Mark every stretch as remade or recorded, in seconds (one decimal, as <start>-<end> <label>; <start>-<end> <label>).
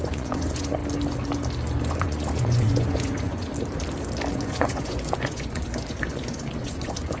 0.0-0.8 remade; 0.8-1.9 recorded; 1.9-3.5 remade; 3.5-4.3 recorded; 4.3-7.2 remade